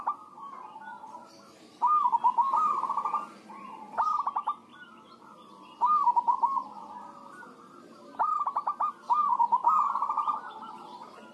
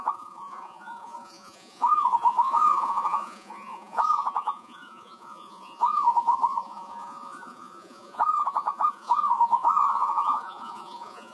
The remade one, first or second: second